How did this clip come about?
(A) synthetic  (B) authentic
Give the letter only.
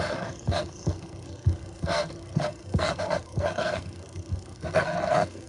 A